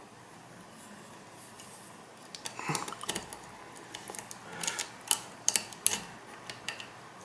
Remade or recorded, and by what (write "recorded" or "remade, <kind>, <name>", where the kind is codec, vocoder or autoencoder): recorded